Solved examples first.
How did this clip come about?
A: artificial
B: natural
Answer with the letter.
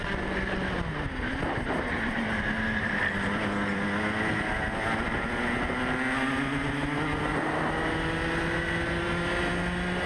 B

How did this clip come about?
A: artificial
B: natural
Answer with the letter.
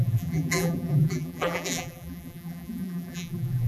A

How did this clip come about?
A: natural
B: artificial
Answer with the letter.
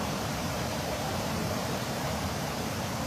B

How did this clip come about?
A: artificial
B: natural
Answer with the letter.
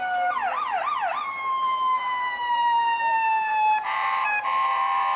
A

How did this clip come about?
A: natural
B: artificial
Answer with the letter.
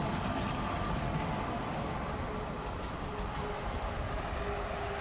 A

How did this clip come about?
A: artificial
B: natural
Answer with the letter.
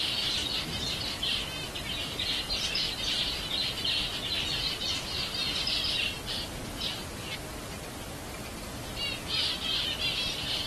A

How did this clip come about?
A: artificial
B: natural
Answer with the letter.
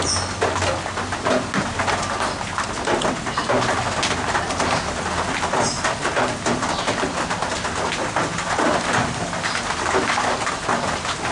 B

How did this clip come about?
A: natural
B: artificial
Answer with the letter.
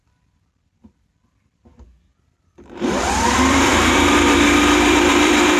B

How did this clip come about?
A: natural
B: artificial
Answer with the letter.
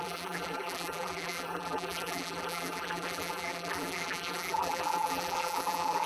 B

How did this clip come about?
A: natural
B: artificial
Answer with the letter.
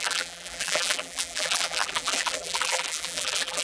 B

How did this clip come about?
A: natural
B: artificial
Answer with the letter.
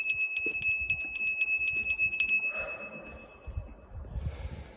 A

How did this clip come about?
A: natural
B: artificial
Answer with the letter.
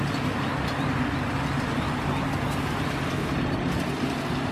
A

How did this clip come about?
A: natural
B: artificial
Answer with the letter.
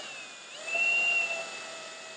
B